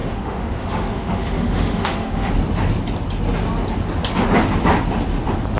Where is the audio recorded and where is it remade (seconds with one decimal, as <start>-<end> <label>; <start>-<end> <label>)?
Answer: 0.0-2.3 remade; 2.3-5.6 recorded